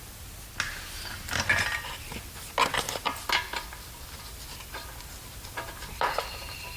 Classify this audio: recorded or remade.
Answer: recorded